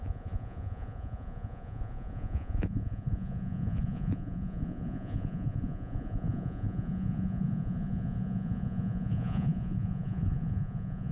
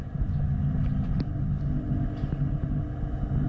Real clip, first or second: second